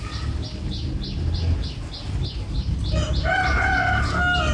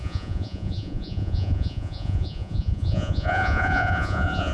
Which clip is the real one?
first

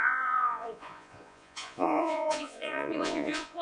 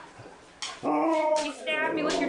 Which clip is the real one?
second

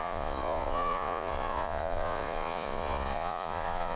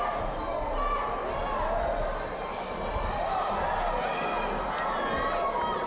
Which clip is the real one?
second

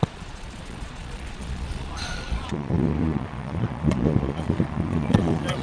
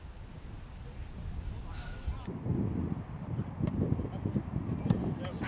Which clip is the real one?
second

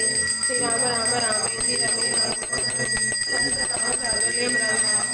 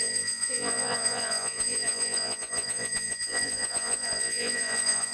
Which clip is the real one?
first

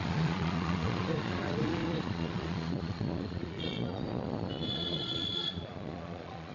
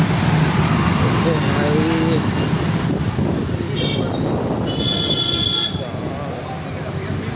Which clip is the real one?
second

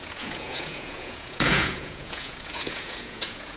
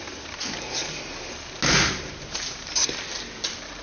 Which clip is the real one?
second